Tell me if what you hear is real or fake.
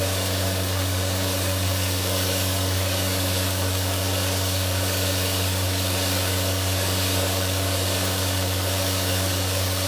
fake